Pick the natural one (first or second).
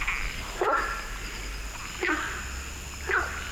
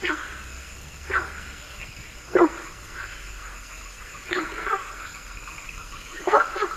first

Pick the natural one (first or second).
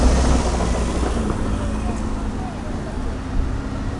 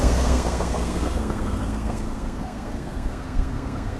first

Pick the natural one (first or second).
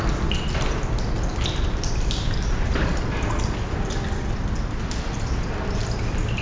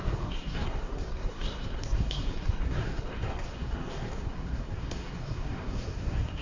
first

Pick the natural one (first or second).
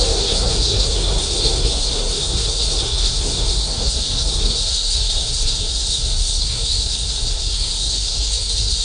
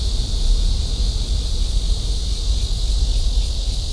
second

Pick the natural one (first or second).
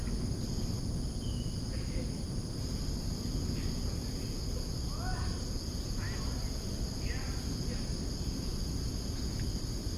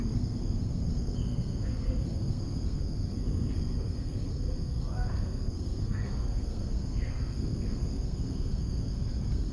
first